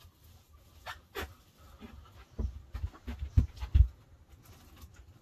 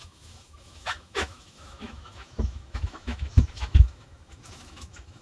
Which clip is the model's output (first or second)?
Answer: second